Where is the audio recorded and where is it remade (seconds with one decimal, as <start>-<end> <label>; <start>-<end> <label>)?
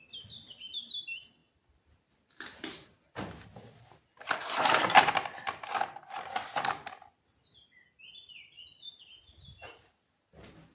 0.0-1.4 recorded; 1.4-3.3 remade; 3.3-8.7 recorded; 8.7-9.7 remade; 9.7-10.7 recorded